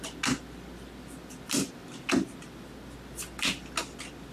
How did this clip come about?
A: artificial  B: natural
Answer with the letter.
B